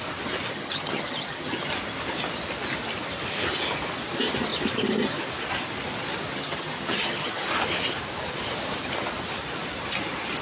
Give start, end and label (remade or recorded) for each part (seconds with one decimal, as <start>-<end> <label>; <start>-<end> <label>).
0.0-0.5 recorded; 0.5-1.7 remade; 1.7-6.3 recorded; 6.3-7.5 remade; 7.5-10.4 recorded